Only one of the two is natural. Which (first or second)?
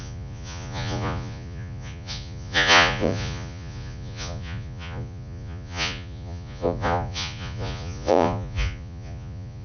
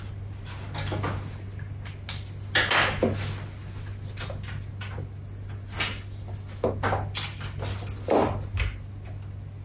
second